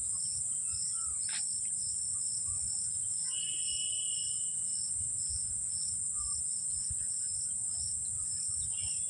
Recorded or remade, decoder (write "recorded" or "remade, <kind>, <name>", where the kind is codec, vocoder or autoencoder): recorded